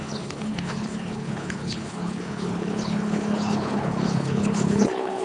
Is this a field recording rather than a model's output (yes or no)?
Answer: no